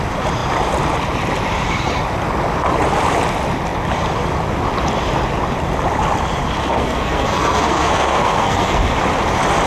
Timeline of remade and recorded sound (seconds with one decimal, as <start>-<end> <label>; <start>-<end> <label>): 0.0-6.6 recorded; 6.6-8.8 remade; 8.8-9.7 recorded